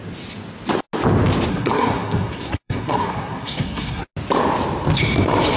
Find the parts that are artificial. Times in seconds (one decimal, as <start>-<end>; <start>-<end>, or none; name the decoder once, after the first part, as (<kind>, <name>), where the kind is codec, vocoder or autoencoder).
1.5-4.1 (codec, SNAC)